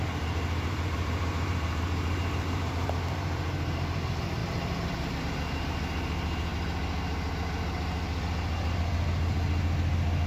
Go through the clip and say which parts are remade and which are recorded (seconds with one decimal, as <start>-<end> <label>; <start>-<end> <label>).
0.0-6.5 remade; 6.5-10.3 recorded